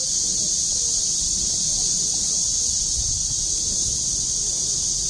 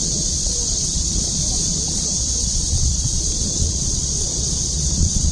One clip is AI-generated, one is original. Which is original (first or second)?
first